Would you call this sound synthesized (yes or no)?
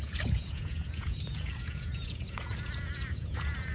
yes